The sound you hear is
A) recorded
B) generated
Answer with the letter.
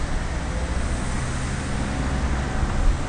A